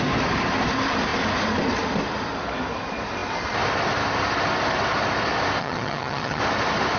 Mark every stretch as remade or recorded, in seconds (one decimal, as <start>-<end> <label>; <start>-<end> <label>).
0.0-5.6 recorded; 5.6-6.4 remade; 6.4-7.0 recorded